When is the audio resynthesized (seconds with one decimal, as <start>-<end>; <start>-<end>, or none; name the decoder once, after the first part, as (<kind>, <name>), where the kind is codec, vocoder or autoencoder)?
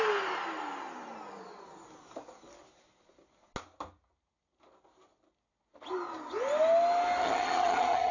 7.2-8.1 (vocoder, HiFi-GAN)